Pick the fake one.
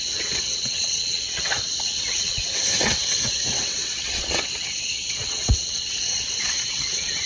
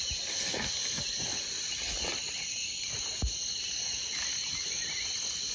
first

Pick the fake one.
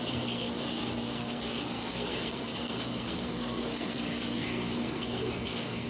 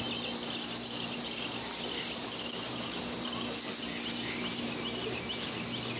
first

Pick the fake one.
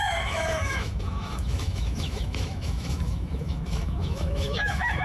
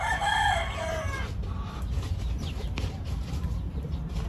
first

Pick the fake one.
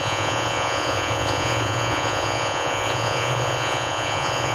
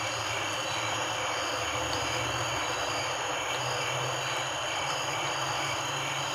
first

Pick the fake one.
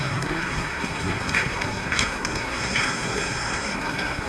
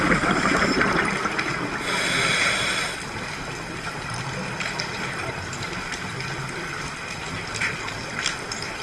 first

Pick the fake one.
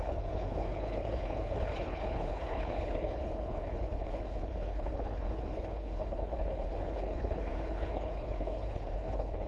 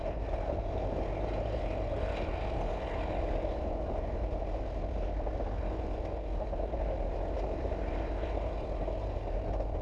first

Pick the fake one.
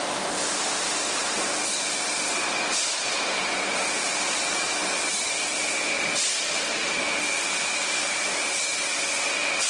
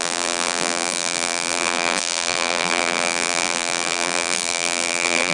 second